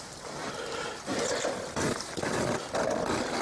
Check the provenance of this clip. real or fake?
real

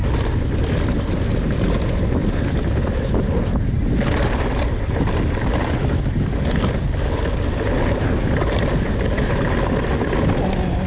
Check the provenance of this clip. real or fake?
real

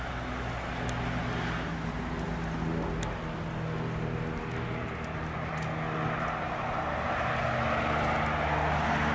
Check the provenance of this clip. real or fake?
real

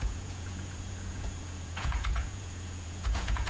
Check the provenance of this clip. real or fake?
fake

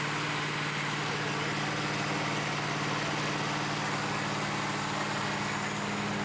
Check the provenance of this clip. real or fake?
real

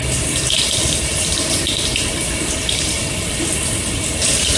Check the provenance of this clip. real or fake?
fake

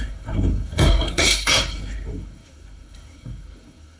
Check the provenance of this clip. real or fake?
fake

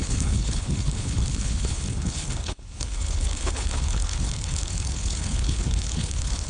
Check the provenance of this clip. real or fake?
fake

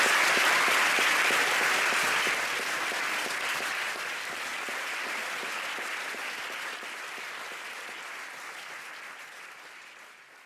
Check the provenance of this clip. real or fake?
real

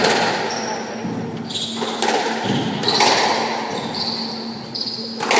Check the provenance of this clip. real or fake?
real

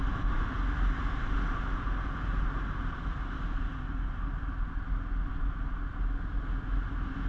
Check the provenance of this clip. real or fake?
real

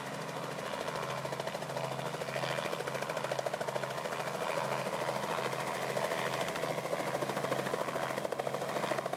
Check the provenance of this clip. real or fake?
real